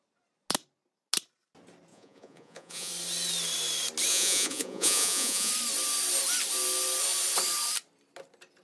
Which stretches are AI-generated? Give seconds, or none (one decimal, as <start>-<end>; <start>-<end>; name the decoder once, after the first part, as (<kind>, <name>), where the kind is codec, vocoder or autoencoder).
1.9-2.9 (vocoder, Vocos); 4.1-5.5

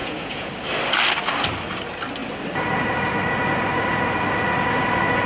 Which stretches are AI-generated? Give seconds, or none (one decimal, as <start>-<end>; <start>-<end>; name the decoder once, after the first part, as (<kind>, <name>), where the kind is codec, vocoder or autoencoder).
0.0-0.5 (vocoder, Vocos)

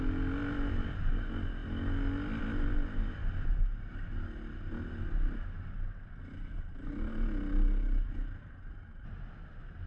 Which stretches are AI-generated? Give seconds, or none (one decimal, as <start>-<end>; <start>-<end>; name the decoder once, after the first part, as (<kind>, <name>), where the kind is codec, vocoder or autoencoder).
none

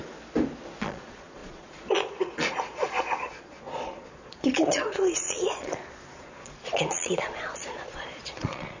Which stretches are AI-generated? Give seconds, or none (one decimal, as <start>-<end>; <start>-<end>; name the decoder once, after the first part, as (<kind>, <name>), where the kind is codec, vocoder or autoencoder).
0.8-8.8 (vocoder, Vocos)

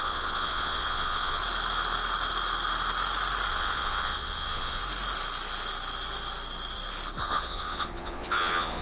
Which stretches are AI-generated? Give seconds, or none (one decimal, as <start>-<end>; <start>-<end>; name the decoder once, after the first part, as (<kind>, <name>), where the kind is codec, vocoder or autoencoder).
0.0-1.4 (vocoder, Vocos); 3.5-4.8; 7.2-8.8

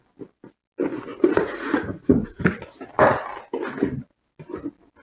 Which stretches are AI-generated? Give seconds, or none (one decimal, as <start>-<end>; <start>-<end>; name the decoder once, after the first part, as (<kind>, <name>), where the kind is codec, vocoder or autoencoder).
1.1-2.4 (vocoder, Vocos)

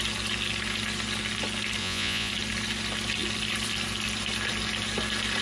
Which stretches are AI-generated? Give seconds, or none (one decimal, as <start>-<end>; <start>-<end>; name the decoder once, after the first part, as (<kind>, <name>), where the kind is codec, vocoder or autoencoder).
1.8-2.3 (vocoder, Vocos)

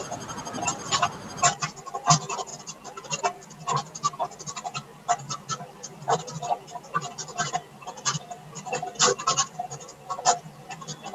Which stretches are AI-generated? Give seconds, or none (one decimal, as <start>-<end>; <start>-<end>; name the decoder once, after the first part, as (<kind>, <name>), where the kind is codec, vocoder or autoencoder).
none